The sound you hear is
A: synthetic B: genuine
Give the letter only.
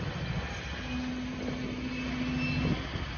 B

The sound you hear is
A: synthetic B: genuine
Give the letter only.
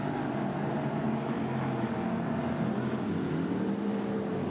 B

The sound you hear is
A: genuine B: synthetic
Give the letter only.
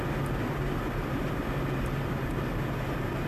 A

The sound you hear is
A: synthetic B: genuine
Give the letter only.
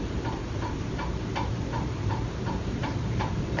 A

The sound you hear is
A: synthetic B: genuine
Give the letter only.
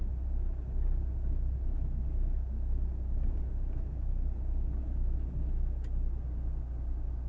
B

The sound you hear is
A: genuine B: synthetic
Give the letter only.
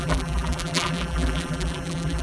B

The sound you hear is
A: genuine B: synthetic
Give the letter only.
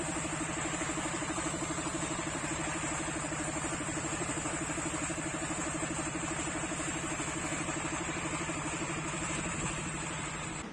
B